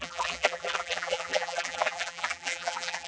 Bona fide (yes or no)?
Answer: no